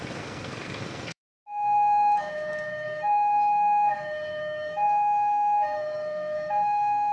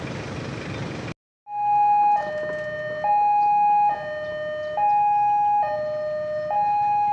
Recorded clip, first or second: second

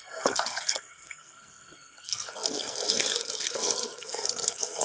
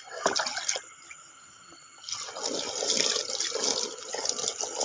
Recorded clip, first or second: second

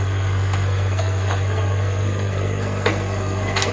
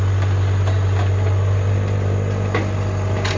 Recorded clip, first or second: second